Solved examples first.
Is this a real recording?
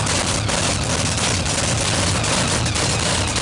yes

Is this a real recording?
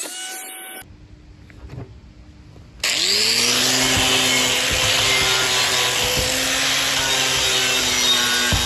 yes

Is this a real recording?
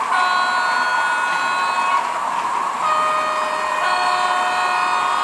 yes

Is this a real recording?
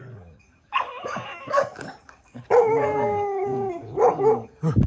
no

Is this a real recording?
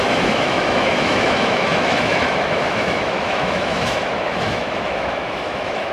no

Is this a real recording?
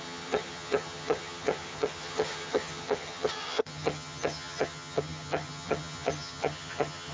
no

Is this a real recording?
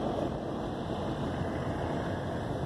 yes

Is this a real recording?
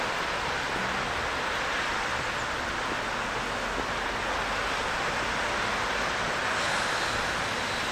yes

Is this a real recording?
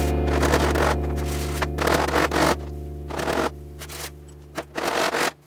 yes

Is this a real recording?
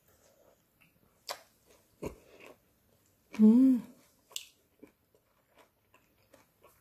yes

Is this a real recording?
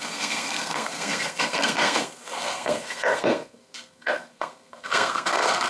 no